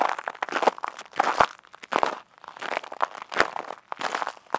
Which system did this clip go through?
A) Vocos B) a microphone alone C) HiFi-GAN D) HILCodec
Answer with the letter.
B